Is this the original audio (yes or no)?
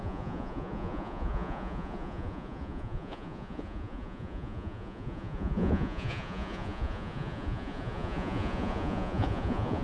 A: no